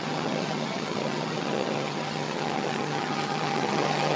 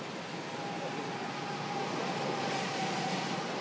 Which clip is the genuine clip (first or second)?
second